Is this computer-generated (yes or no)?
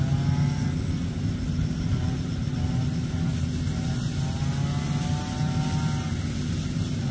no